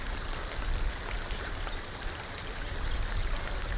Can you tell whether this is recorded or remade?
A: recorded